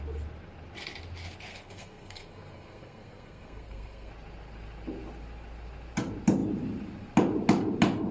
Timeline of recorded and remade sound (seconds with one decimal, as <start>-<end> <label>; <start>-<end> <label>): 0.0-1.5 recorded; 1.5-4.1 remade; 4.1-8.1 recorded